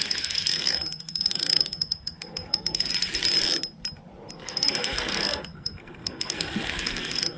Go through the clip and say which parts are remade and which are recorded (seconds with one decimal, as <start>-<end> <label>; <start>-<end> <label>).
0.0-2.9 remade; 2.9-4.3 recorded; 4.3-7.4 remade